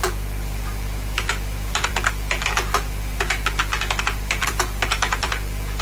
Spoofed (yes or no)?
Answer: yes